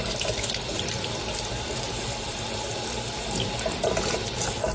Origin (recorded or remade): remade